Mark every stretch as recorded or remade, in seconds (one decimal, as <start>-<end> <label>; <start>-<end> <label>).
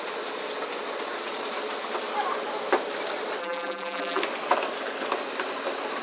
0.0-3.4 recorded; 3.4-4.2 remade; 4.2-6.0 recorded